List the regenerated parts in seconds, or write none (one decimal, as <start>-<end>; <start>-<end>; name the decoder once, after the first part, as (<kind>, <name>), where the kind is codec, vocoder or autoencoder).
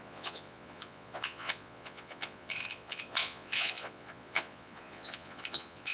0.0-5.9 (vocoder, Vocos)